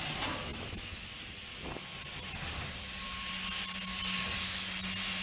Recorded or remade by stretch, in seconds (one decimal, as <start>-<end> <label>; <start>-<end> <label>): 0.0-5.2 recorded